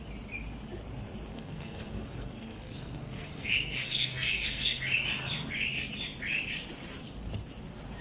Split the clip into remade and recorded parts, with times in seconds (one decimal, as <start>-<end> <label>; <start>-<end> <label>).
0.0-1.3 recorded; 1.3-4.8 remade; 4.8-8.0 recorded